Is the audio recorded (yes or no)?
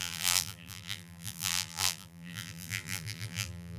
no